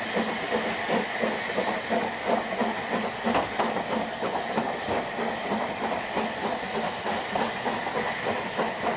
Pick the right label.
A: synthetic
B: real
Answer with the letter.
B